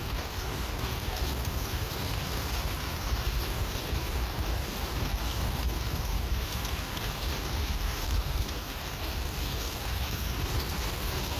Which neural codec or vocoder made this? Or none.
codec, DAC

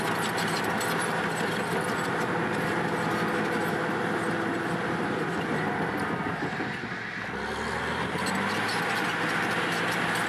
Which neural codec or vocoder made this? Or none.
none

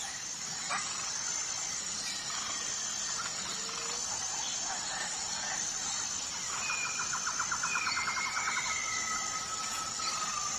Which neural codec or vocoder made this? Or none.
none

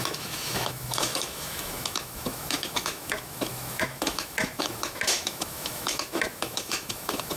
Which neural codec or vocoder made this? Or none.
autoencoder, DAC-VAE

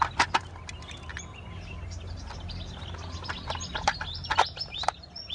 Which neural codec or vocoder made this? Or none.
none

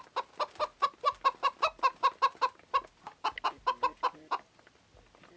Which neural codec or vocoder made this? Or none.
none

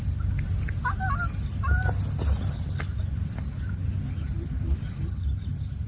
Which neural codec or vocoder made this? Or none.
none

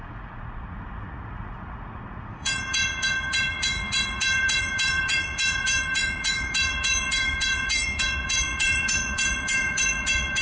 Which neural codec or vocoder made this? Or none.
vocoder, Vocos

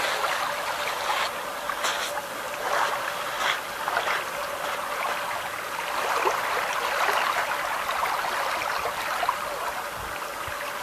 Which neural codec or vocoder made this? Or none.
none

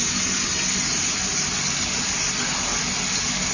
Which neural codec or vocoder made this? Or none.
none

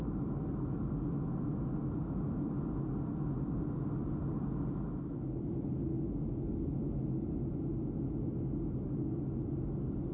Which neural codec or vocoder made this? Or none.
none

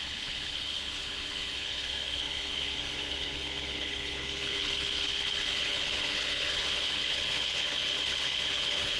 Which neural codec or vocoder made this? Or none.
codec, HILCodec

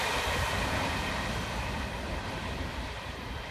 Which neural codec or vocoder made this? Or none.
none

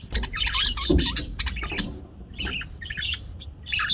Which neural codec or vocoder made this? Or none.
none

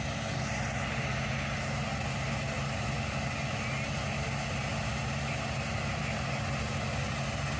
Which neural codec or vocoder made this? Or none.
none